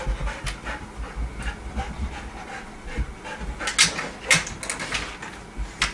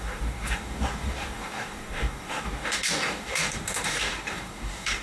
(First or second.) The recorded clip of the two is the first